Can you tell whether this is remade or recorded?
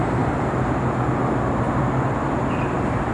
recorded